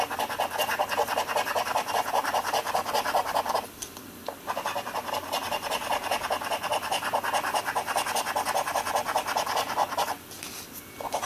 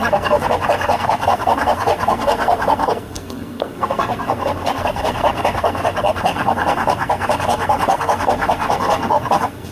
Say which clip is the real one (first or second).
first